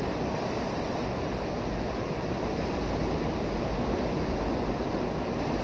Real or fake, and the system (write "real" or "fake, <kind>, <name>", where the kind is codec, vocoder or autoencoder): real